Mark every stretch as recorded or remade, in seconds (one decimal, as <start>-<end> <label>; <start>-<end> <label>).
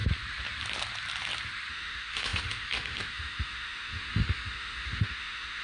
0.0-1.7 recorded; 1.7-5.6 remade